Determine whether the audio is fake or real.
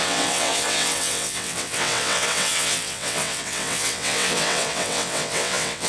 fake